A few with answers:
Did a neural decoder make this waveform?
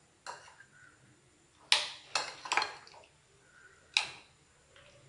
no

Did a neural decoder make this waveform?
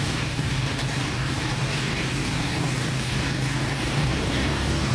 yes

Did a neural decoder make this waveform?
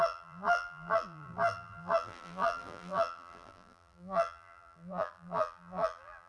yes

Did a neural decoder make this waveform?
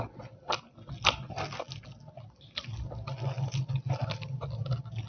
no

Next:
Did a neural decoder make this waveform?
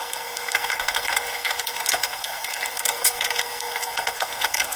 yes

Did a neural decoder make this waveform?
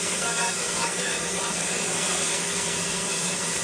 yes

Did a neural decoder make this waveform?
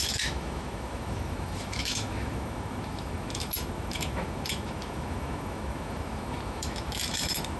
yes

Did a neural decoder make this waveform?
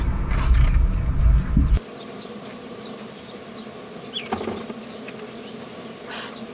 no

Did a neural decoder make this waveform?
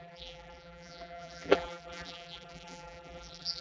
yes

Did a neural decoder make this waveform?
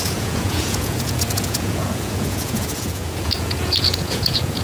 yes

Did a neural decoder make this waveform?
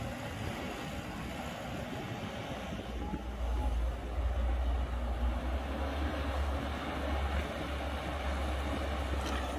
no